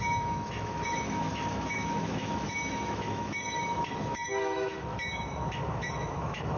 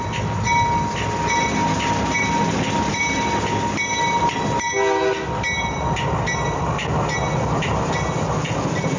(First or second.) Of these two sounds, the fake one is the first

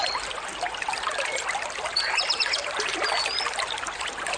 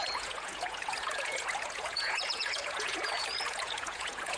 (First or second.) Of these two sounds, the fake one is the second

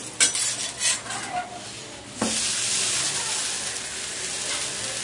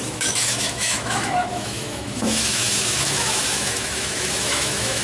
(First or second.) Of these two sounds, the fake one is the second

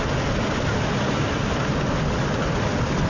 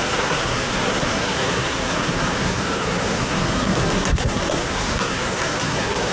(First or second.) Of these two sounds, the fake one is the second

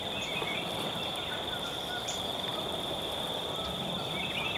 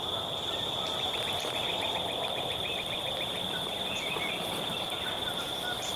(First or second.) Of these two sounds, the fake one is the second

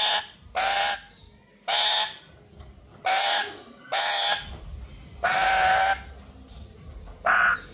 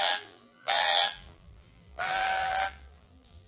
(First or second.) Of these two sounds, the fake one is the second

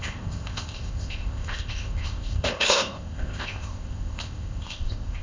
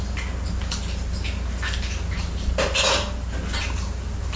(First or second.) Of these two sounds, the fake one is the first